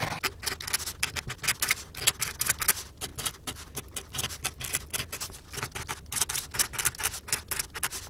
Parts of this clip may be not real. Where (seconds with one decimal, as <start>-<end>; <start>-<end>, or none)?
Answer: 3.1-4.3